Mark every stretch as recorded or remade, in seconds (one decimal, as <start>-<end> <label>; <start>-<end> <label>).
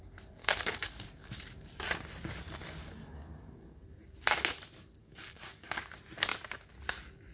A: 0.0-0.4 recorded; 0.4-1.4 remade; 1.4-2.8 recorded; 2.8-3.8 remade; 3.8-5.0 recorded; 5.0-5.8 remade; 5.8-7.3 recorded